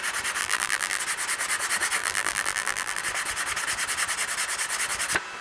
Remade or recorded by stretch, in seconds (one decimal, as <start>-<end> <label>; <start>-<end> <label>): 0.0-0.4 recorded; 0.4-1.0 remade; 1.0-2.0 recorded; 2.0-3.0 remade; 3.0-5.4 recorded